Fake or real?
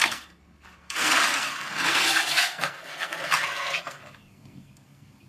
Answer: fake